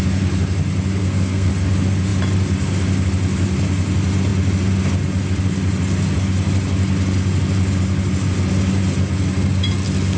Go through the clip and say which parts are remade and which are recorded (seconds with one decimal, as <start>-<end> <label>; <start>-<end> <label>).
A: 0.0-1.0 recorded; 1.0-1.5 remade; 1.5-10.2 recorded